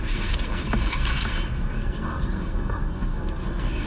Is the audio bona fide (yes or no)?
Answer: no